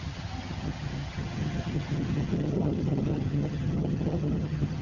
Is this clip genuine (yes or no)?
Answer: no